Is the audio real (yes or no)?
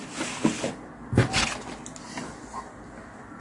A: yes